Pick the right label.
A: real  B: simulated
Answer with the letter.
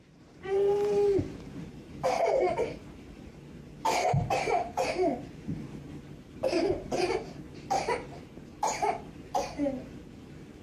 B